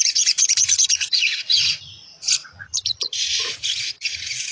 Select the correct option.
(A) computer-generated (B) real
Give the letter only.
A